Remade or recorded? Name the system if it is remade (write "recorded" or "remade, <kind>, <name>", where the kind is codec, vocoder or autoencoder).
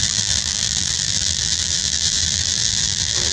remade, vocoder, BigVGAN v2